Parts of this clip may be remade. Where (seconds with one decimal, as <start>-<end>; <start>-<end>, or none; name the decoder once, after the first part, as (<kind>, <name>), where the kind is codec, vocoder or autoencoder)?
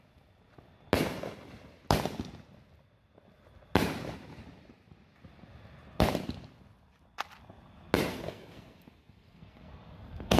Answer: 8.1-10.4 (codec, SNAC)